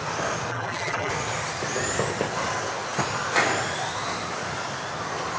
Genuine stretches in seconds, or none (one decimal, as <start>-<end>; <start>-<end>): 0.0-0.5; 1.1-5.4